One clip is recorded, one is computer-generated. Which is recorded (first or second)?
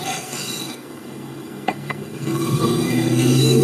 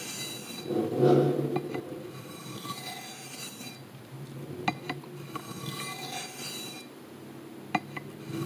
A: second